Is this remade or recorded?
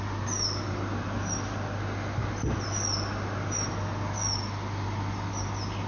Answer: recorded